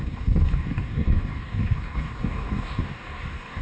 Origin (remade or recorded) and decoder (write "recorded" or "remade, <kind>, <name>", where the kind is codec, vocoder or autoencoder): remade, codec, DAC